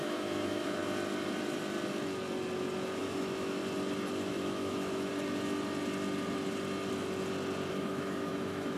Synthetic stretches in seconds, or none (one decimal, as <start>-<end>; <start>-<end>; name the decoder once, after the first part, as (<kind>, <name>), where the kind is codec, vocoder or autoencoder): 0.0-0.8 (autoencoder, DAC-VAE); 3.0-3.6; 4.3-5.1; 7.7-8.8